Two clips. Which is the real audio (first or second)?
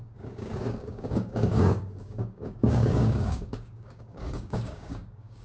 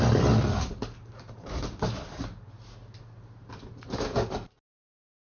second